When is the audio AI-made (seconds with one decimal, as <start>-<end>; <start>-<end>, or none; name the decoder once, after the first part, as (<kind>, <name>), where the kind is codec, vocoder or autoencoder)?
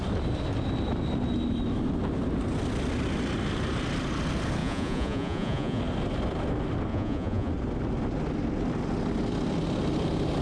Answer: 4.6-5.8 (vocoder, Vocos); 6.9-7.5